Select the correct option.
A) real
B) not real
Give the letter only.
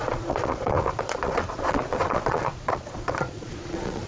B